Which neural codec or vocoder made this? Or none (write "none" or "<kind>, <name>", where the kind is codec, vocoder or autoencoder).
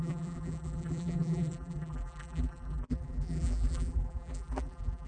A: vocoder, BigVGAN v2